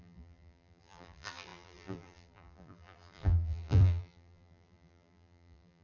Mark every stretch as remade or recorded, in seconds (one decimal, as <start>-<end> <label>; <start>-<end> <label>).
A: 0.0-5.8 remade